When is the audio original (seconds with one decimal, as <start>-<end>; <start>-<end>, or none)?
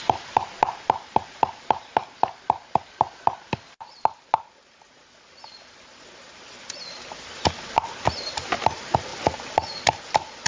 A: 0.0-10.5